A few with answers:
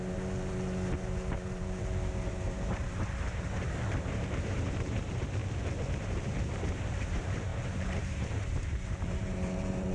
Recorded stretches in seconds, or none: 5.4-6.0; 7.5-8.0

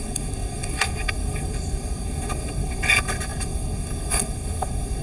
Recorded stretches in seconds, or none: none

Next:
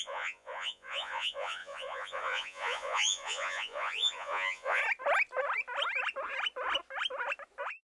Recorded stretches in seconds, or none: 4.8-8.0

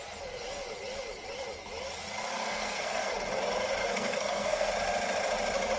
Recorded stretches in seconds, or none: 0.0-2.3; 3.1-3.8; 4.7-5.8

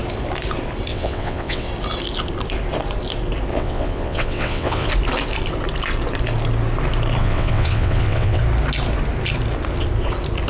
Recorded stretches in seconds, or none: 0.0-0.9; 1.7-3.5; 4.9-7.2; 8.4-10.5

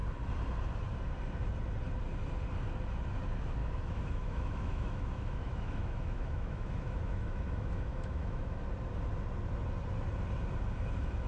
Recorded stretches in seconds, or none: 0.0-3.6; 8.6-11.3

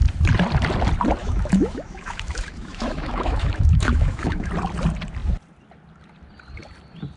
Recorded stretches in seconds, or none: 0.0-1.2; 4.5-7.2

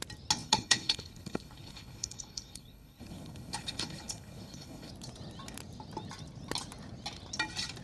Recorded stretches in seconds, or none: 0.0-0.4; 4.9-7.8